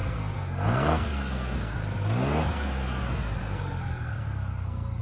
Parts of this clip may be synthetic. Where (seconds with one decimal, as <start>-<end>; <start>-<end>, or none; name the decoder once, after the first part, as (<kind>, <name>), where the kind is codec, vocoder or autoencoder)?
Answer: 0.0-3.0 (codec, SNAC); 3.4-5.0